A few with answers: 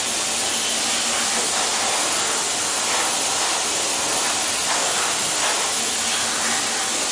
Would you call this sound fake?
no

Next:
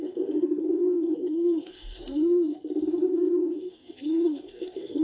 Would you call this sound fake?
yes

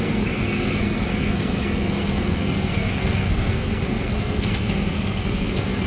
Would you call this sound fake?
yes